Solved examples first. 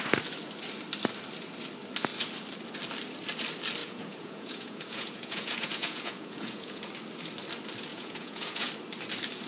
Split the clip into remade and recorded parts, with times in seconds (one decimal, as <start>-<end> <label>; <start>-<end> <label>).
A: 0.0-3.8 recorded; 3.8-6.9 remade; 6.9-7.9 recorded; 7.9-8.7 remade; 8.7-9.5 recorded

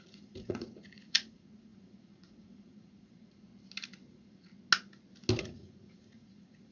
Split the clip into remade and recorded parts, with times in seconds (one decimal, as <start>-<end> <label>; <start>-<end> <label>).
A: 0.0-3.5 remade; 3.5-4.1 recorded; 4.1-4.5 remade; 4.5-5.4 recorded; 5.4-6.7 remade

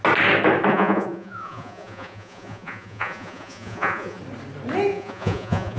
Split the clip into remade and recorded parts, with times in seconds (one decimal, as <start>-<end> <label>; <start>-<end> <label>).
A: 0.0-0.7 recorded; 0.7-4.2 remade; 4.2-4.9 recorded; 4.9-5.8 remade

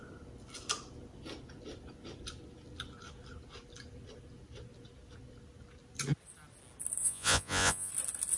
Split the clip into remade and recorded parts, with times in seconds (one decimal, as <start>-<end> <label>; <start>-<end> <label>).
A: 0.0-7.0 recorded; 7.0-7.9 remade; 7.9-8.4 recorded